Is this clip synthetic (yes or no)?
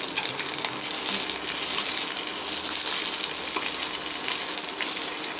no